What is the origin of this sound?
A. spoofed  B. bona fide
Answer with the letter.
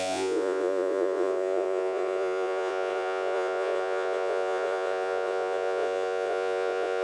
A